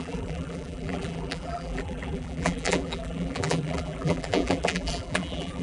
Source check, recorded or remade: remade